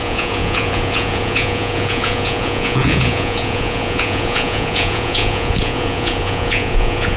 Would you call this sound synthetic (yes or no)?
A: yes